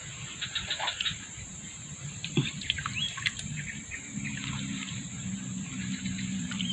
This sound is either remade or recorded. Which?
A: remade